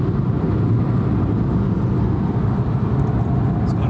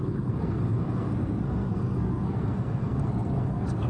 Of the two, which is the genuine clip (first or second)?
first